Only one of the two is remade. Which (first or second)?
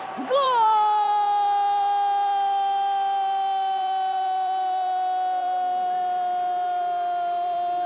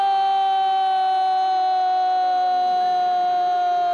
first